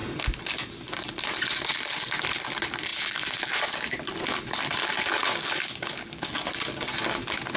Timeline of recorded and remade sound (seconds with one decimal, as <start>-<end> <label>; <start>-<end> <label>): 0.0-5.2 recorded; 5.2-6.5 remade; 6.5-7.6 recorded